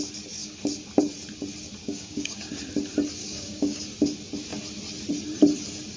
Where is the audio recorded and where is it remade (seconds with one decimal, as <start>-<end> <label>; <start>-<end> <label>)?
0.0-1.8 recorded; 1.8-2.5 remade; 2.5-3.2 recorded; 3.2-3.8 remade; 3.8-6.0 recorded